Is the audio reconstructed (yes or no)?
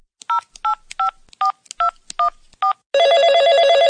no